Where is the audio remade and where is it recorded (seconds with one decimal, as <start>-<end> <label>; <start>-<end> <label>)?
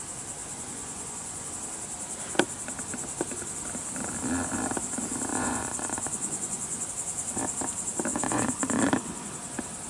0.0-0.4 recorded; 0.4-1.5 remade; 1.5-5.3 recorded; 5.3-6.9 remade; 6.9-8.1 recorded; 8.1-9.3 remade; 9.3-9.9 recorded